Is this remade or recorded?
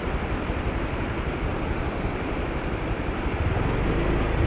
remade